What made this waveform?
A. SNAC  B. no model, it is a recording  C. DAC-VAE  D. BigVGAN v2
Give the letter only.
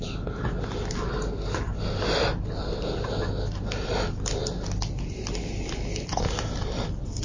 B